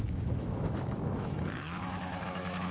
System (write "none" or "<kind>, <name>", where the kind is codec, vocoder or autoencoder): autoencoder, DAC-VAE